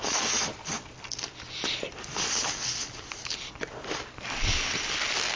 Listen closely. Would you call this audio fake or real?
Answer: real